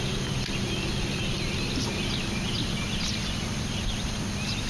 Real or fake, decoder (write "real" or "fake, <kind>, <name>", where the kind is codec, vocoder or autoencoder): real